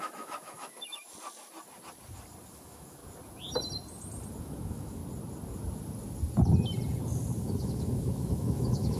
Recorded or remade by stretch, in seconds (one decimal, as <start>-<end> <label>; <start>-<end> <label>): 0.0-1.1 remade; 1.1-2.5 recorded; 2.5-3.0 remade; 3.0-4.4 recorded; 4.4-5.0 remade; 5.0-7.4 recorded; 7.4-9.0 remade